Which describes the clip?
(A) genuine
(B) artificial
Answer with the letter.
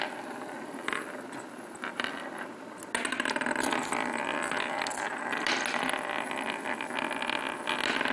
A